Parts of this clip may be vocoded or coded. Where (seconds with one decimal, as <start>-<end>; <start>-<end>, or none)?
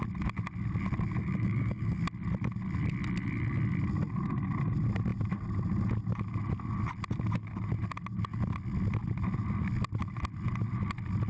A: 1.2-2.0